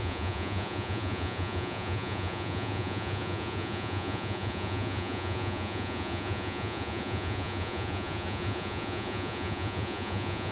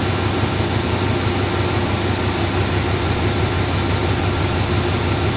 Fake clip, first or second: first